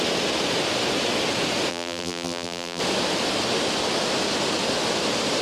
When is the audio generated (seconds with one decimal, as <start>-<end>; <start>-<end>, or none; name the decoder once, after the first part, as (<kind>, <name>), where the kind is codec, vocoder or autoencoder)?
1.7-2.8 (vocoder, BigVGAN v2)

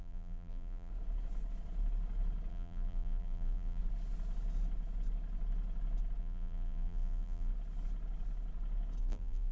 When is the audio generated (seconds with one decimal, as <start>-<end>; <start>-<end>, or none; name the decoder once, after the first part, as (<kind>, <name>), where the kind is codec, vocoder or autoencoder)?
0.0-0.9 (vocoder, BigVGAN v2); 2.5-3.8; 6.2-7.5; 9.0-9.5

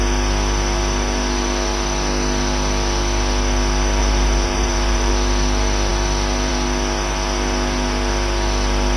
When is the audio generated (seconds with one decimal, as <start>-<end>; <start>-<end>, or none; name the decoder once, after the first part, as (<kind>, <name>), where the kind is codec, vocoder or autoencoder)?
4.0-5.1 (vocoder, BigVGAN v2)

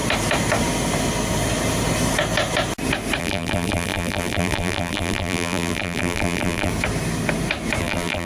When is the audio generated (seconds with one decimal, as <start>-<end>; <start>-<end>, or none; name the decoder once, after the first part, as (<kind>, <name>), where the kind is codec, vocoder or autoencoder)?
3.2-6.7 (vocoder, BigVGAN v2); 7.8-8.3

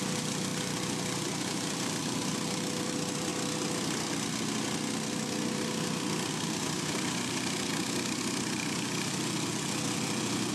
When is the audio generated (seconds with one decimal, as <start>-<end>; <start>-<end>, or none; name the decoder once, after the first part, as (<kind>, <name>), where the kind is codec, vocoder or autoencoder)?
0.0-0.5 (vocoder, BigVGAN v2); 1.7-3.3; 6.3-7.7; 8.2-10.5